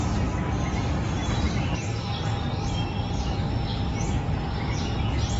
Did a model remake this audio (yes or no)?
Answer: no